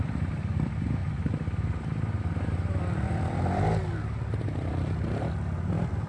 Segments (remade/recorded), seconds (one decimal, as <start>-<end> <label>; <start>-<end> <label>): 0.0-6.1 recorded